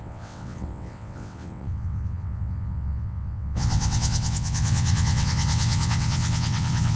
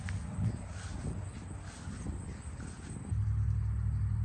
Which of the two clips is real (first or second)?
second